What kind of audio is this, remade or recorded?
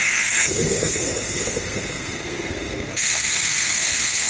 remade